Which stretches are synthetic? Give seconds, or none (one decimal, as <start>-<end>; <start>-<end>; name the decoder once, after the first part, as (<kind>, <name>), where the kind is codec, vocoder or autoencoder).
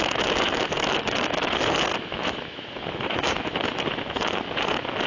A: 0.0-5.1 (autoencoder, DAC-VAE)